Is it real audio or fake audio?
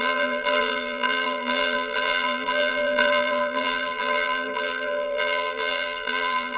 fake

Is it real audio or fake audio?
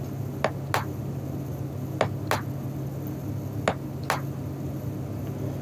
real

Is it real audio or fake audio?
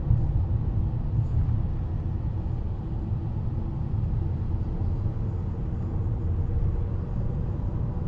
real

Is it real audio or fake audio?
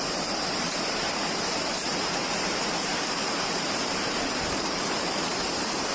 fake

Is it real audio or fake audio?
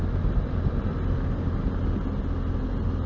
real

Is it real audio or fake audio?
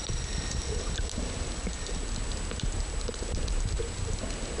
real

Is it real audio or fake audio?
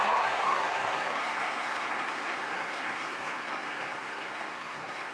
fake